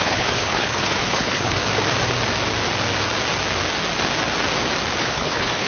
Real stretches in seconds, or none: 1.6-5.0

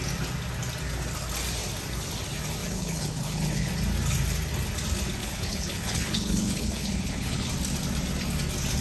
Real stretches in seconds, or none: 0.0-2.6; 3.7-5.2; 7.5-8.8

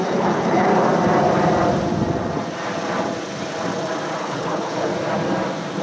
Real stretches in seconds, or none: 0.7-4.2; 4.9-5.8

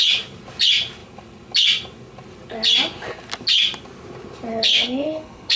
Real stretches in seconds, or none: 0.0-4.5

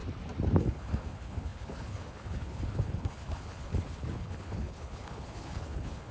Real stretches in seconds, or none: 0.0-0.6